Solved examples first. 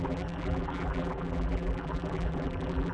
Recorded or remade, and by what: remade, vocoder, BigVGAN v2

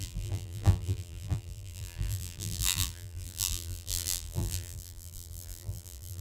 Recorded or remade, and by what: remade, vocoder, BigVGAN v2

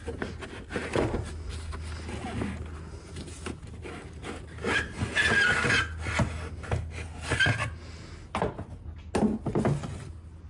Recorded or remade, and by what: recorded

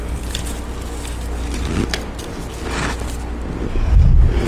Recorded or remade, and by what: recorded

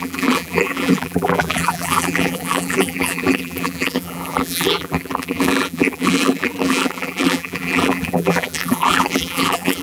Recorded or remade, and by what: remade, vocoder, BigVGAN v2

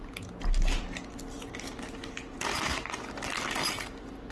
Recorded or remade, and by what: recorded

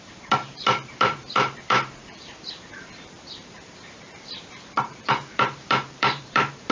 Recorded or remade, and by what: remade, vocoder, BigVGAN v2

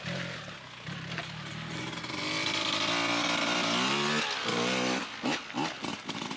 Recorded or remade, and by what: recorded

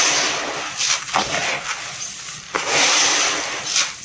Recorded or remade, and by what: recorded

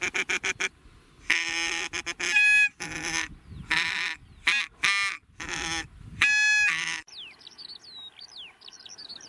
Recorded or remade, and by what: recorded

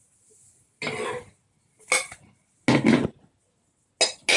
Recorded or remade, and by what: recorded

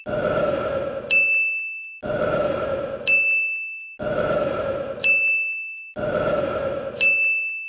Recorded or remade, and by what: recorded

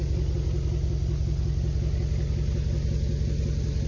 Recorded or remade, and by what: recorded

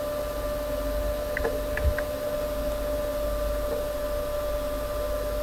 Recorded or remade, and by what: recorded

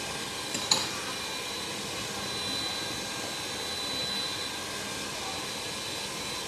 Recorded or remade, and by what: recorded